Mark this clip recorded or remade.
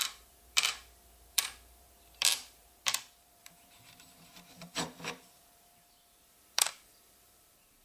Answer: remade